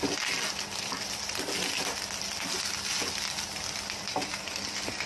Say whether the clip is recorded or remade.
recorded